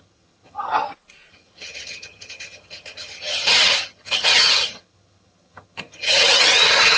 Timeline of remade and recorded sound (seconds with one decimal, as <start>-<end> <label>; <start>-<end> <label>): 0.0-0.7 remade; 0.7-1.3 recorded; 1.3-7.0 remade